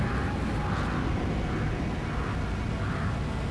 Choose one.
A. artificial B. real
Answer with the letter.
B